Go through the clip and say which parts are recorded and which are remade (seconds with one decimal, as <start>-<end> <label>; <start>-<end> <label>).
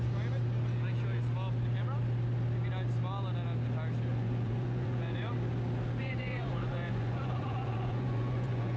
0.0-4.1 recorded; 4.1-5.3 remade; 5.3-6.0 recorded; 6.0-8.8 remade